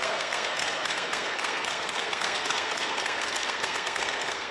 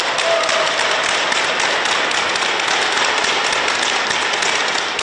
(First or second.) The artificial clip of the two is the first